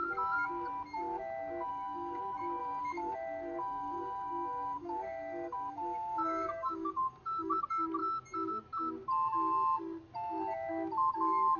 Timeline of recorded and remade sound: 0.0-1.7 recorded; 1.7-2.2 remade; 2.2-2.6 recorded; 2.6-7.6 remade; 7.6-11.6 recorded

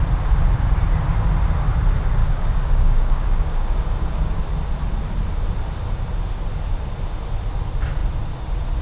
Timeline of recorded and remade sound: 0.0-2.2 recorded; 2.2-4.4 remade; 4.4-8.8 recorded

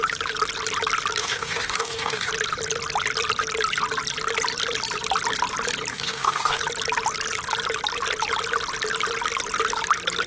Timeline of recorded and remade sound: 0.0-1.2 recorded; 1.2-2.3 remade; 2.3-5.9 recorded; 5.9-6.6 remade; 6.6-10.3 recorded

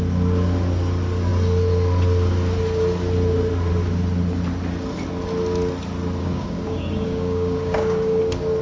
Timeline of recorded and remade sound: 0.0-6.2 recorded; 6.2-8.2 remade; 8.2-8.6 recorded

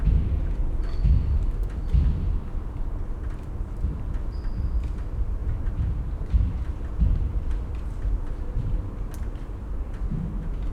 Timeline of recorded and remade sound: 0.0-10.7 recorded

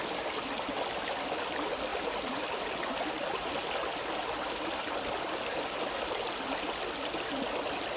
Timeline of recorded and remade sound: 0.0-8.0 recorded